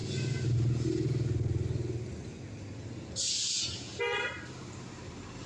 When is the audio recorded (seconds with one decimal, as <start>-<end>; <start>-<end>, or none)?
0.0-5.5